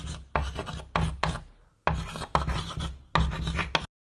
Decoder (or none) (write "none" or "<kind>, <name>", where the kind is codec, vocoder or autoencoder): none